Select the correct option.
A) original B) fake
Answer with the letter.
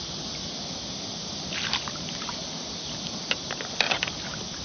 A